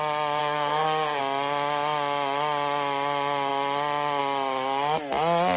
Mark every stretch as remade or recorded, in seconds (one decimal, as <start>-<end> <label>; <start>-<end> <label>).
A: 0.0-0.4 recorded; 0.4-1.2 remade; 1.2-5.6 recorded